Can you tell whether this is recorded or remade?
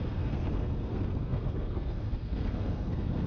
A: remade